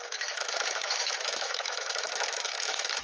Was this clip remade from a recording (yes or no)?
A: yes